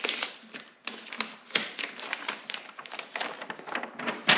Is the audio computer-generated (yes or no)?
no